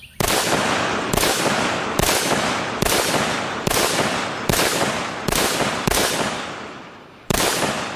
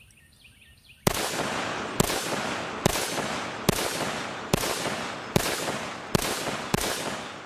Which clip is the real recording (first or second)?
second